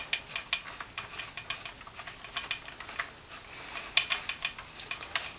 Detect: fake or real real